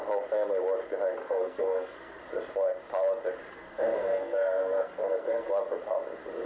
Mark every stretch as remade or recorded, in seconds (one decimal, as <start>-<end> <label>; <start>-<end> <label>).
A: 0.0-1.2 recorded; 1.2-2.2 remade; 2.2-3.5 recorded; 3.5-5.5 remade; 5.5-6.5 recorded